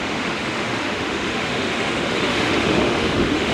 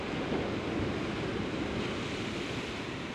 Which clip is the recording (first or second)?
second